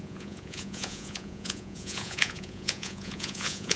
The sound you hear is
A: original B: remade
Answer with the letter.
B